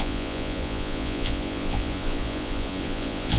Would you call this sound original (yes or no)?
no